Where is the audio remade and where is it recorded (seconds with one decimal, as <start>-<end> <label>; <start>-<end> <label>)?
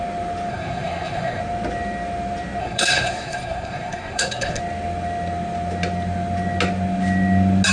0.0-0.5 recorded; 0.5-1.4 remade; 1.4-2.6 recorded; 2.6-4.6 remade; 4.6-7.7 recorded